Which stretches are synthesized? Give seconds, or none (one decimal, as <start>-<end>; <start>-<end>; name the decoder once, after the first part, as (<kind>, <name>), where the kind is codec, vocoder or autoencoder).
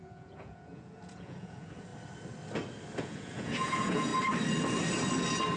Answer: 0.0-1.9 (vocoder, Vocos); 3.0-4.1